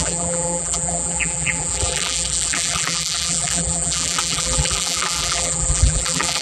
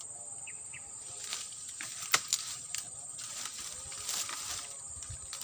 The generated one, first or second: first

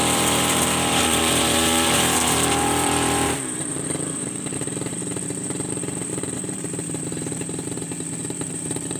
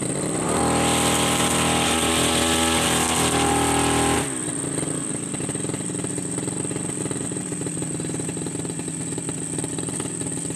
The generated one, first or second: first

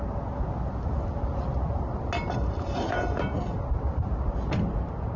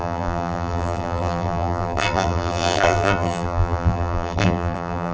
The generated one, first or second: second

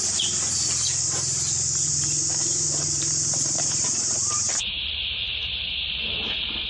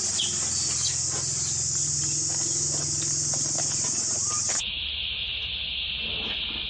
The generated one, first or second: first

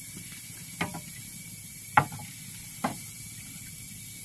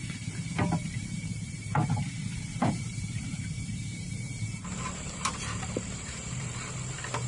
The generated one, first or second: second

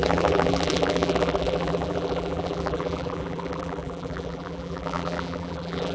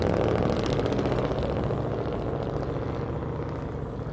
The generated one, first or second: first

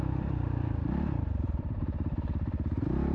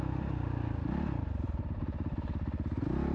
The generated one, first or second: first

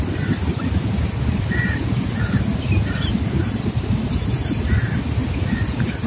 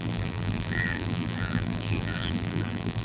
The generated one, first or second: second